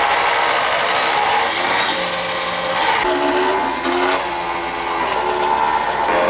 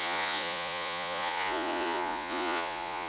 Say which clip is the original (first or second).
first